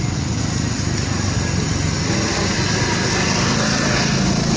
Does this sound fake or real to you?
real